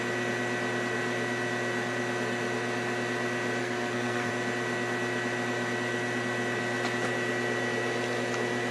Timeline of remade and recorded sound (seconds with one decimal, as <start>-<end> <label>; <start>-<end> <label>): 0.0-3.6 recorded; 3.6-4.3 remade; 4.3-8.7 recorded